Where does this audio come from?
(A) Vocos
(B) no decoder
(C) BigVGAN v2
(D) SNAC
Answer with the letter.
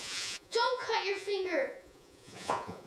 A